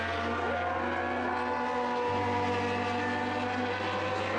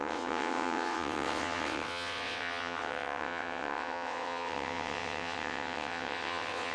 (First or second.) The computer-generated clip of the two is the second